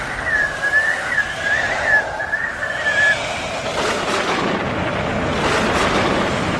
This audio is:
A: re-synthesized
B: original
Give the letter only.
B